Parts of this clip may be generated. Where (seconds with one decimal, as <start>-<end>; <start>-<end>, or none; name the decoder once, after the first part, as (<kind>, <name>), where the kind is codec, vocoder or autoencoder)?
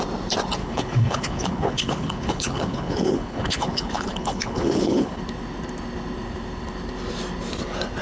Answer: 0.6-5.2 (codec, HILCodec)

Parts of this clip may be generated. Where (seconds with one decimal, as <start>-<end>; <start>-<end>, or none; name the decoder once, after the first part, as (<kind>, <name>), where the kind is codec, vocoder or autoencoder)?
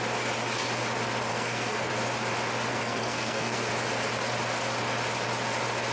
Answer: 1.3-1.9 (codec, SNAC); 2.7-3.7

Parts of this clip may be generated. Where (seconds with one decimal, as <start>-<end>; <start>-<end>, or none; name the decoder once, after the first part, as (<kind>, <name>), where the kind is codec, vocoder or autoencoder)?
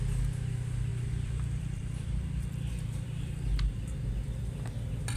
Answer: 0.9-4.0 (vocoder, BigVGAN v2)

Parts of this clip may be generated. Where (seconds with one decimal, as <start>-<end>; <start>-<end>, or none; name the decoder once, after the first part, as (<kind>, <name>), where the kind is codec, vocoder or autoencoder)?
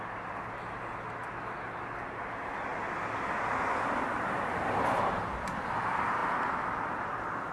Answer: none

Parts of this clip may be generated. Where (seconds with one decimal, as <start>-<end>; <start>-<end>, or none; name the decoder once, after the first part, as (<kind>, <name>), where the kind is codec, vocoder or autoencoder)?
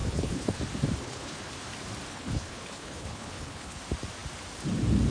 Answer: 0.0-0.6 (codec, HILCodec); 1.0-1.5; 2.1-3.8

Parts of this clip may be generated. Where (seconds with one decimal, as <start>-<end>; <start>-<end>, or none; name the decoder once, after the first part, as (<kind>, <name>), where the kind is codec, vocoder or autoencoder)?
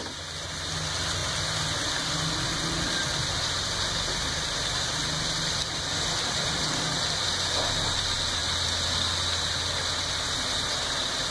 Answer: none